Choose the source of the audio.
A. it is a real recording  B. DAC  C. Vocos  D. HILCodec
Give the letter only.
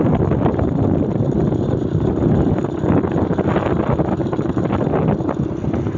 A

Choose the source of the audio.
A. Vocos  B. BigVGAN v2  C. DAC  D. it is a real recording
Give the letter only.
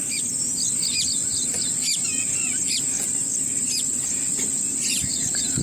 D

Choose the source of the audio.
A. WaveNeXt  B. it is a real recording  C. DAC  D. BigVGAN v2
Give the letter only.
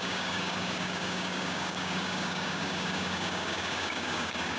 C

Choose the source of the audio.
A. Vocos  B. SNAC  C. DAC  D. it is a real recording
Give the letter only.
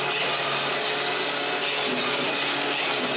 D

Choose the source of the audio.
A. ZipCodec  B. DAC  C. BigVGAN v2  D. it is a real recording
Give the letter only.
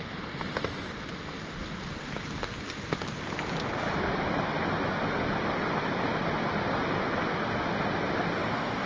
D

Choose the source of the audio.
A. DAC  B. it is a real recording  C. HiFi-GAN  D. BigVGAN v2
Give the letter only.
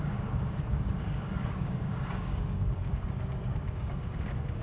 A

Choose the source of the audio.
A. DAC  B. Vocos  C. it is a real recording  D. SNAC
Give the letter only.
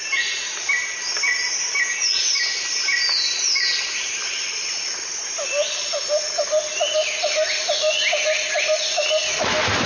C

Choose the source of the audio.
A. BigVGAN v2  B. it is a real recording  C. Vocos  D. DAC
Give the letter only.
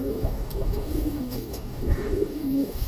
D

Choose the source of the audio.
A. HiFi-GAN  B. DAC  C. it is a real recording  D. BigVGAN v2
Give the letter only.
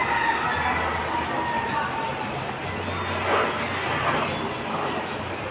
C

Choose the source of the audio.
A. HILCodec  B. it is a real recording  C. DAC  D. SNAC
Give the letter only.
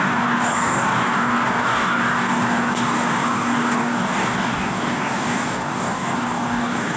C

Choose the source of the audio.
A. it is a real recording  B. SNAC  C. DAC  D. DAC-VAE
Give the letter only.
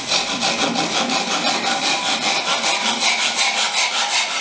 A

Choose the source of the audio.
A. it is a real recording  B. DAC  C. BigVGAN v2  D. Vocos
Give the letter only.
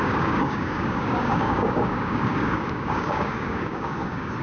B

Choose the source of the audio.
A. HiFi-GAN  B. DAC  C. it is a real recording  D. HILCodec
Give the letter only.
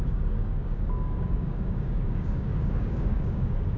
B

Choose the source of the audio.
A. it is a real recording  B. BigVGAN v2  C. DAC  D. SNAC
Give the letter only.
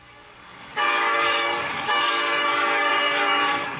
C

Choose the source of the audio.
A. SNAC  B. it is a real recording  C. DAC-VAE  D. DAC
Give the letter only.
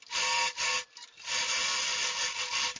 B